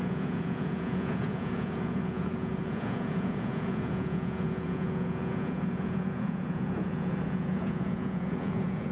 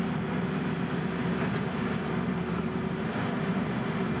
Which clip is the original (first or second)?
second